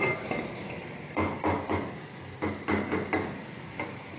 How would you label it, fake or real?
real